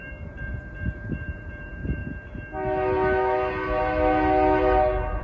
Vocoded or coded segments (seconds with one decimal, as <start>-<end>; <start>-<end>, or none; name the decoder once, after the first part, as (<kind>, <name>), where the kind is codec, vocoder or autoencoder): 0.0-2.0 (vocoder, BigVGAN v2)